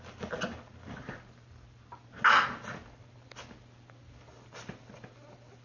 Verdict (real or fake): real